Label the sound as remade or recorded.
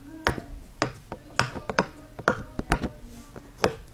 recorded